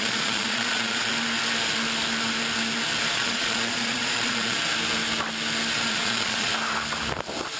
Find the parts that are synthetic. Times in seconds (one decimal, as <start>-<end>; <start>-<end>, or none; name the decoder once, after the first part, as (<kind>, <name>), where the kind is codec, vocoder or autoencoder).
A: 0.0-1.1 (vocoder, Vocos); 3.1-4.6; 5.9-6.5